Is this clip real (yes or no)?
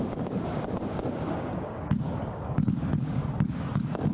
no